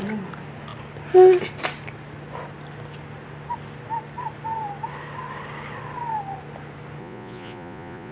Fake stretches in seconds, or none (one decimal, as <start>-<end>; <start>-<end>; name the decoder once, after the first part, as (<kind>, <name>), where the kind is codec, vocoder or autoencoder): 7.0-8.1 (vocoder, Vocos)